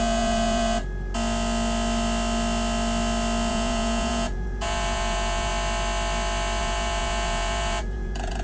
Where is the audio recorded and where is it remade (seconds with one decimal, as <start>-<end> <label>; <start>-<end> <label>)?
0.0-0.8 remade; 0.8-3.5 recorded; 3.5-5.5 remade; 5.5-6.6 recorded; 6.6-8.4 remade